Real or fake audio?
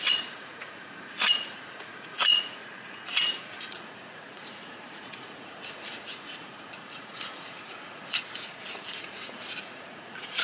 fake